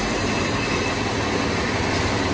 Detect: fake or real real